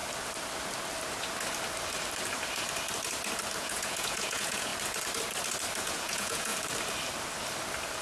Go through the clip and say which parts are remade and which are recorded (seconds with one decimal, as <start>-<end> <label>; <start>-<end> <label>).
0.0-3.6 recorded; 3.6-4.7 remade; 4.7-5.8 recorded; 5.8-6.5 remade; 6.5-8.0 recorded